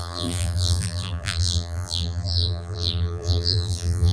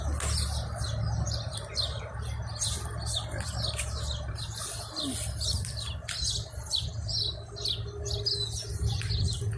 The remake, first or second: first